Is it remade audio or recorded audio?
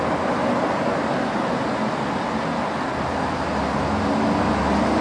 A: recorded